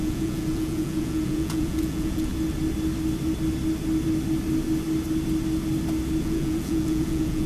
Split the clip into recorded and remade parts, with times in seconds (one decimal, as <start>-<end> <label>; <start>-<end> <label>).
0.0-2.3 remade; 2.3-6.2 recorded; 6.2-7.5 remade